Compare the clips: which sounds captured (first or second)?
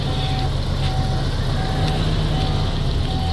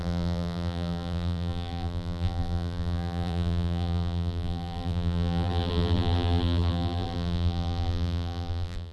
first